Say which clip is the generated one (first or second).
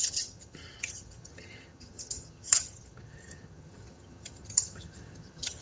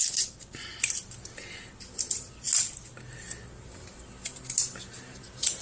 first